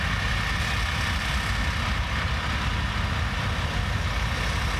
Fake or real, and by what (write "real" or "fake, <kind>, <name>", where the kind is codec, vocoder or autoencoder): real